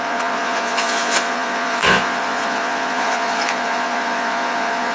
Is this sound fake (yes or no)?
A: yes